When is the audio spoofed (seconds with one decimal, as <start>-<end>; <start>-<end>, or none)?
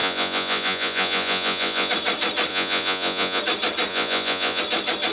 0.0-1.9; 2.5-3.4; 3.9-4.6